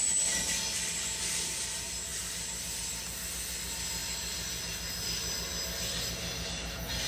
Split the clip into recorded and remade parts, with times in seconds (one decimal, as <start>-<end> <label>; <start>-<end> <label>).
0.0-7.1 recorded